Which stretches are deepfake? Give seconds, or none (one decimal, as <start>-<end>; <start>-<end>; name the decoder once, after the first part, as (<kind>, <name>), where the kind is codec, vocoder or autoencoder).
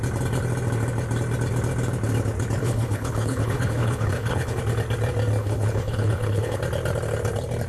2.6-4.6 (codec, HILCodec); 5.4-6.6